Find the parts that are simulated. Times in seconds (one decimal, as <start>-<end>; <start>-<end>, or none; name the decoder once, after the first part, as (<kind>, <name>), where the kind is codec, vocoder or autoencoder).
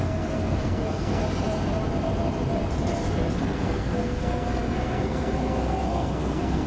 0.0-1.2 (codec, SNAC); 3.3-6.7